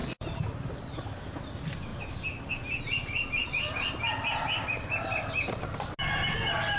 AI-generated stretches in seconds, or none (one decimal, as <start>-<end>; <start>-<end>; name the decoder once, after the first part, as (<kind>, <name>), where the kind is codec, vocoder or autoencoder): none